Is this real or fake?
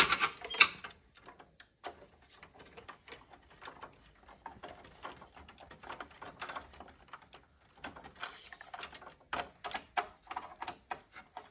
real